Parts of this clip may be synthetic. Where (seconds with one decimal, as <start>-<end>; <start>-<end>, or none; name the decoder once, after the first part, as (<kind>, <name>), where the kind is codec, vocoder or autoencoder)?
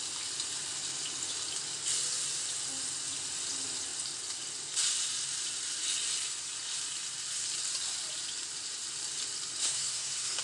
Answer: 9.6-10.4 (codec, SNAC)